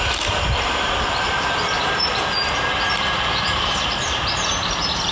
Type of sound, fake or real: fake